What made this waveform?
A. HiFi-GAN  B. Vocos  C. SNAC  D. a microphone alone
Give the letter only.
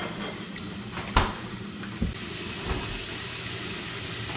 D